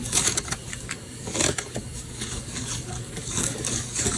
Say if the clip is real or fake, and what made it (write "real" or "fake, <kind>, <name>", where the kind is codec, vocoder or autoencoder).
fake, codec, DAC